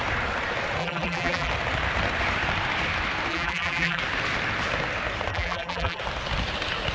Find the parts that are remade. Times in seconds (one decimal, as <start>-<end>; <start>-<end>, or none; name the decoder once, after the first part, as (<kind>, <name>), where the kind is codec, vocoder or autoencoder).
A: 0.8-1.5 (vocoder, BigVGAN v2); 3.3-4.0; 5.3-6.0